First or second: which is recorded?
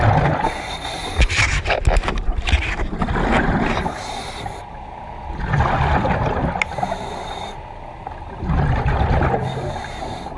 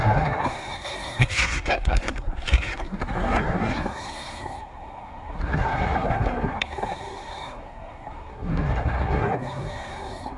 first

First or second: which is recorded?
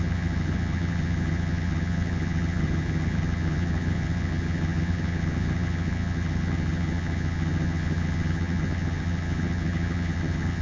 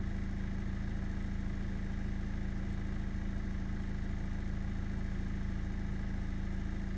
second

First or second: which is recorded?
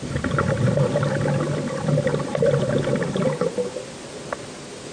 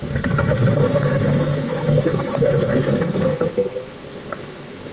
first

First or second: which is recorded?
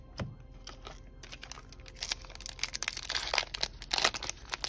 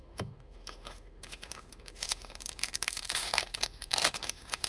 first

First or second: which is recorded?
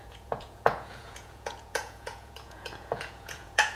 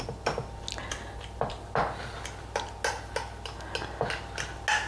second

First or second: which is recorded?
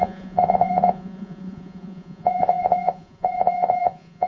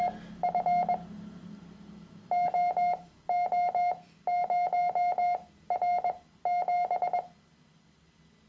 second